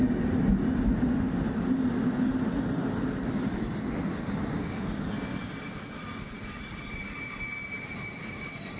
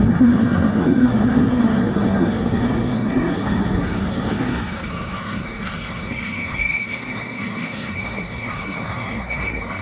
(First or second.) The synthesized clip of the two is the second